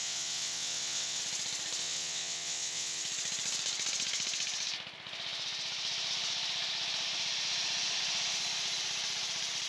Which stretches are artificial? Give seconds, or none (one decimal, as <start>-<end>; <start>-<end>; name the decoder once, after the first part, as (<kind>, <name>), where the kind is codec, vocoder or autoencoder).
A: 0.0-1.2 (vocoder, WaveNeXt); 1.8-3.0